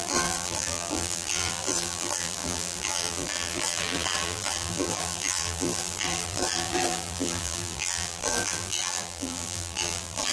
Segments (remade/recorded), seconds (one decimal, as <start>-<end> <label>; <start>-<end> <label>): 0.0-10.3 remade